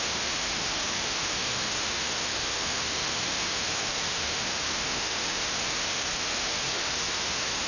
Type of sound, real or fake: fake